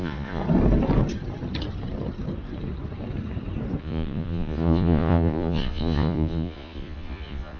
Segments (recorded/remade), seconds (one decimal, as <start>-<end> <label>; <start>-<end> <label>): 0.0-0.4 remade; 0.4-3.8 recorded; 3.8-7.6 remade